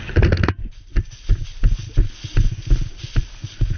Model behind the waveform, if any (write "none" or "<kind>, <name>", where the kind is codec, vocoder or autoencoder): none